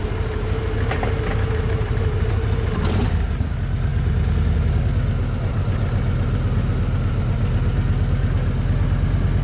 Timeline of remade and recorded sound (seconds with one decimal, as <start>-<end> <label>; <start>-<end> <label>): 0.0-9.4 recorded